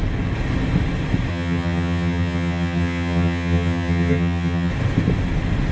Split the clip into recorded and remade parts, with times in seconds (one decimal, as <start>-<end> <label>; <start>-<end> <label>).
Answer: 0.0-1.3 recorded; 1.3-4.7 remade; 4.7-5.7 recorded